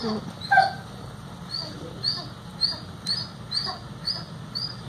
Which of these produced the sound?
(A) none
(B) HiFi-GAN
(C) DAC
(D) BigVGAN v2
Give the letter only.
A